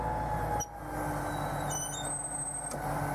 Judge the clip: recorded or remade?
recorded